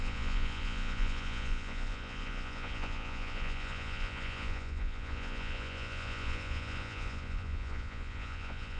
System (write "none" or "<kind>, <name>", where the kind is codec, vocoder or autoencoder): vocoder, Vocos